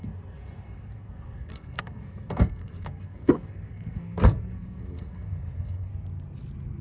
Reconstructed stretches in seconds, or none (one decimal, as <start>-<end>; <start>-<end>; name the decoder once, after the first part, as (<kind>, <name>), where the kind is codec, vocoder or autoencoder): 0.0-5.9 (codec, SNAC)

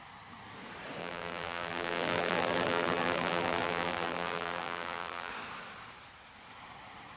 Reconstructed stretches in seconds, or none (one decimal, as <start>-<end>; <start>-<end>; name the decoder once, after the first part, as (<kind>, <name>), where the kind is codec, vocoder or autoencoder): 1.0-5.3 (vocoder, BigVGAN v2)

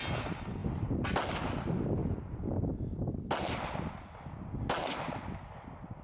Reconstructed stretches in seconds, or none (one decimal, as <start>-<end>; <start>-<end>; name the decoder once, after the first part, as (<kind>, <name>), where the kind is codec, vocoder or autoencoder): none

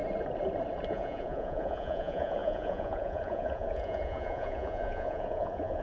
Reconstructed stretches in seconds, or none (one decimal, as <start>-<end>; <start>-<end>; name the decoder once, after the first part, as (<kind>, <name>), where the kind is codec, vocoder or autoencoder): 0.9-5.8 (vocoder, Vocos)

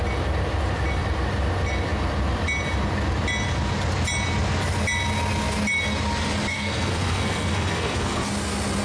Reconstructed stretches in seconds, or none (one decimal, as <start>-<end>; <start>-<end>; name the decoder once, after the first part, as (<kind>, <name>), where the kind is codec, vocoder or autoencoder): 6.5-8.2 (codec, SNAC)

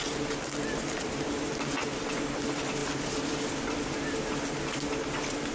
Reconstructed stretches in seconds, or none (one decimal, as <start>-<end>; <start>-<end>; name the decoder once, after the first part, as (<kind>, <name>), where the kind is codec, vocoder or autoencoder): none

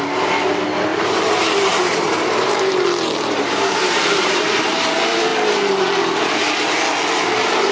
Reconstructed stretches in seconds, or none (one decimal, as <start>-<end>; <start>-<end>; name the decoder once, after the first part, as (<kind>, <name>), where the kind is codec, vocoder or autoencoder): 0.9-4.4 (vocoder, BigVGAN v2)

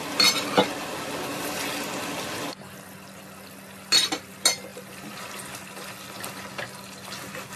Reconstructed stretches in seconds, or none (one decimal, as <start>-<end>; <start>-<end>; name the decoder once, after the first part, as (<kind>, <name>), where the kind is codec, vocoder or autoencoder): none